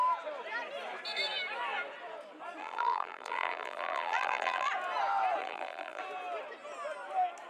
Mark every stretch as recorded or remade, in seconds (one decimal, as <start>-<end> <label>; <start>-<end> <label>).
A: 0.0-2.6 recorded; 2.6-4.7 remade; 4.7-5.4 recorded; 5.4-6.0 remade; 6.0-7.5 recorded